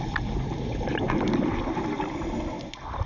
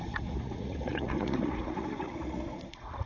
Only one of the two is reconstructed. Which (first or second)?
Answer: second